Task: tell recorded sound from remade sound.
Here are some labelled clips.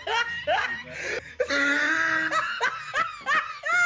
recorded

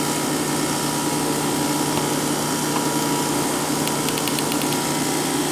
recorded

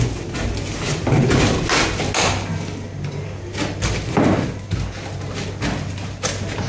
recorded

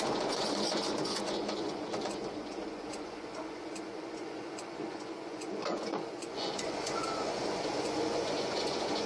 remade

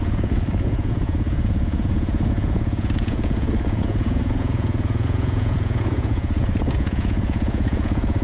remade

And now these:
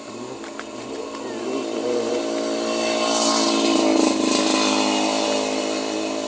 recorded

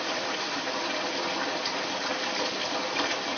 recorded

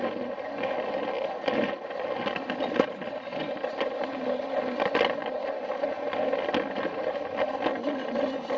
recorded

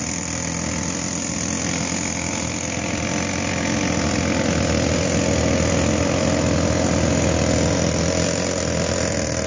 recorded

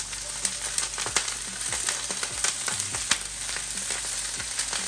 recorded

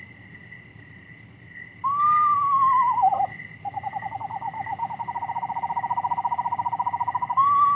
recorded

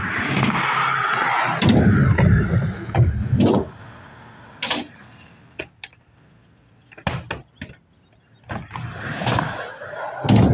recorded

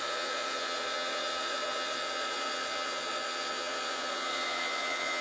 remade